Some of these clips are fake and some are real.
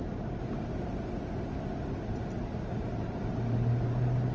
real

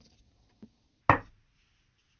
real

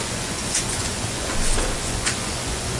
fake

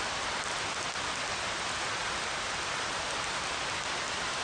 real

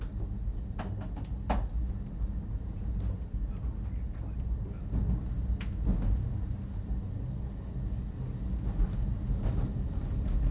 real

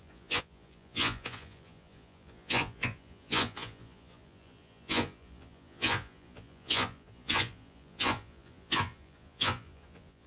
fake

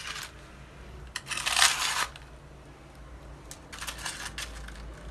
real